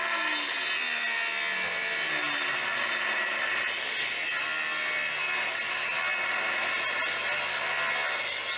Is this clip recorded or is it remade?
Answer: recorded